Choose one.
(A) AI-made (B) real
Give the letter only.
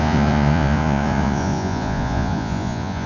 A